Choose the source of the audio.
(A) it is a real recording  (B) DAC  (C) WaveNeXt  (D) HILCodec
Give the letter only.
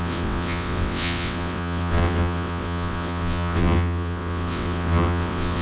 C